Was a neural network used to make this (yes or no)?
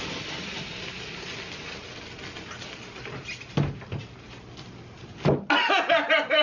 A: no